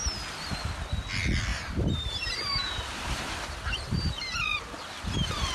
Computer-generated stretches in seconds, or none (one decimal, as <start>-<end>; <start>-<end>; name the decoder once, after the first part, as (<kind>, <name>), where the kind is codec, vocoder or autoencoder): 1.5-4.7 (vocoder, BigVGAN v2)